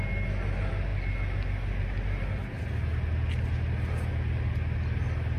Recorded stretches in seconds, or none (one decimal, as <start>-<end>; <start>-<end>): 0.0-5.4

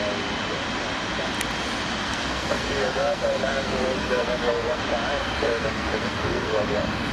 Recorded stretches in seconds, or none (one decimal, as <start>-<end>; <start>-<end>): 0.0-2.0; 4.8-5.2

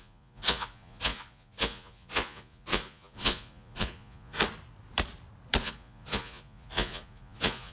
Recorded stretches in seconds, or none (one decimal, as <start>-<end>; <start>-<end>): 4.4-5.6

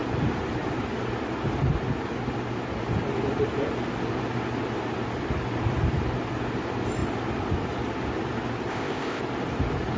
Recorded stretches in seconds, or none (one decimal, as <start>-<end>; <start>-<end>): 0.0-8.7; 9.2-10.0

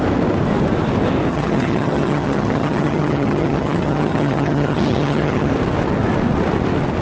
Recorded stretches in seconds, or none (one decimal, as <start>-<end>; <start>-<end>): 0.0-1.3; 5.5-7.0

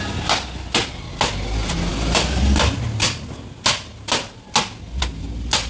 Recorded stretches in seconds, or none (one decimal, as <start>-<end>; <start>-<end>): 0.0-5.7

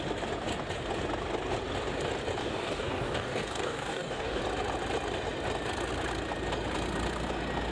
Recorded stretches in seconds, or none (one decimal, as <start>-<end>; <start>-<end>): 0.0-2.4; 4.4-7.7